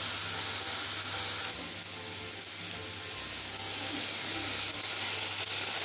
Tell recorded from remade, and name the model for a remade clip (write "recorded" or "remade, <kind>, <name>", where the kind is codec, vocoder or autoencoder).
recorded